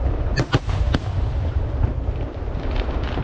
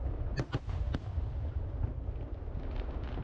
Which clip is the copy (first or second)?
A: first